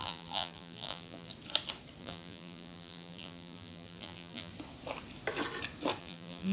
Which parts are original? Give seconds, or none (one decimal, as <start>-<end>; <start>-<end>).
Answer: 1.3-2.0; 4.5-6.0